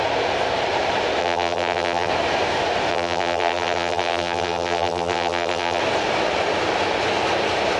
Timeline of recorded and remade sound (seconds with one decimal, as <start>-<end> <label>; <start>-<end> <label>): 0.0-1.2 recorded; 1.2-2.1 remade; 2.1-2.9 recorded; 2.9-5.8 remade; 5.8-7.8 recorded